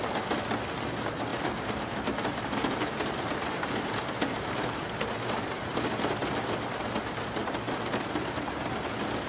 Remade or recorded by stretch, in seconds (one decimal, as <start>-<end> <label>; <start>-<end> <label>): 0.0-1.3 recorded; 1.3-6.2 remade; 6.2-7.4 recorded; 7.4-8.8 remade; 8.8-9.3 recorded

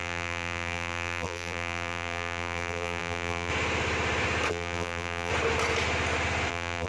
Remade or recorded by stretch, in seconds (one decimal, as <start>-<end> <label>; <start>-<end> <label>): 0.0-3.5 remade; 3.5-4.5 recorded; 4.5-5.3 remade; 5.3-6.5 recorded; 6.5-6.9 remade